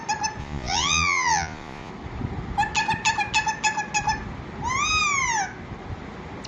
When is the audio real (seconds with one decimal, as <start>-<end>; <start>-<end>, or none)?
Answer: 0.0-0.4; 1.9-6.5